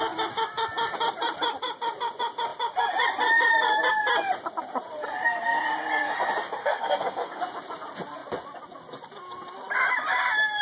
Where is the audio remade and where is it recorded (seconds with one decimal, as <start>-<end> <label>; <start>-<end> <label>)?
0.0-6.6 recorded; 6.6-7.4 remade; 7.4-10.6 recorded